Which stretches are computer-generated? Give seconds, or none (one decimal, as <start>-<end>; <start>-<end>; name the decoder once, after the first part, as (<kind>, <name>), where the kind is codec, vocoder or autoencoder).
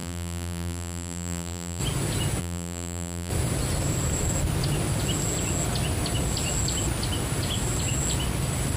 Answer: 0.0-1.8 (vocoder, BigVGAN v2); 2.4-3.3